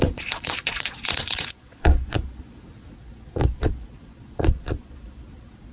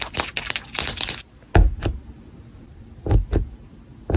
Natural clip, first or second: second